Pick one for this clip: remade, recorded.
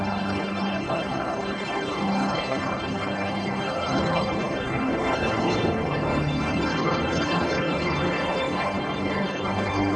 remade